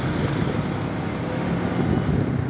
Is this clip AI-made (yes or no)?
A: no